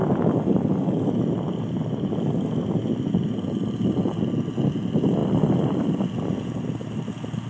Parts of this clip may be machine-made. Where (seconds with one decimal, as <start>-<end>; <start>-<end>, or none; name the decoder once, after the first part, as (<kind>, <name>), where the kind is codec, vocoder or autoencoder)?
none